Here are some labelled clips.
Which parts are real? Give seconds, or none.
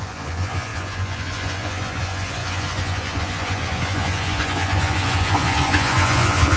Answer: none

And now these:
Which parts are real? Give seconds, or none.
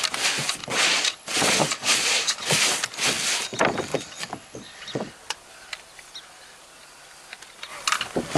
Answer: 0.0-0.6; 2.6-3.9; 5.1-8.4